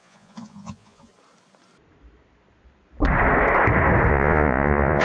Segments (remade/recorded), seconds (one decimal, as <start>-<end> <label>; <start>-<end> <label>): 0.0-1.1 remade; 1.1-4.1 recorded; 4.1-5.0 remade